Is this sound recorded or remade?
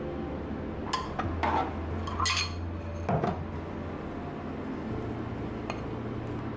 recorded